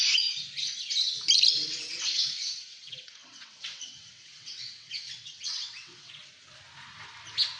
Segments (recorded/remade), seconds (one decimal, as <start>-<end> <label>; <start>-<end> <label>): 0.0-1.6 recorded; 1.6-6.1 remade; 6.1-7.6 recorded